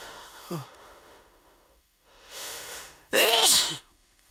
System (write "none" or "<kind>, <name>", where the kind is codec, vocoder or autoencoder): autoencoder, DAC-VAE